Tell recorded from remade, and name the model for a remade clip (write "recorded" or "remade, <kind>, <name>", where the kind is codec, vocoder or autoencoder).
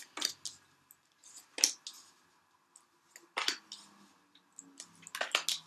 recorded